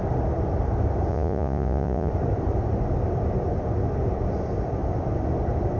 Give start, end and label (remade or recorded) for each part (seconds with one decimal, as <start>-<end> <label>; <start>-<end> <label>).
0.0-1.1 recorded; 1.1-2.1 remade; 2.1-5.8 recorded